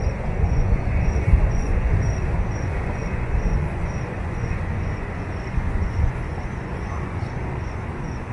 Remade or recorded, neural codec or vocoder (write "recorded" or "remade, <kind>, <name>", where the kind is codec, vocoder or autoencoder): remade, vocoder, Vocos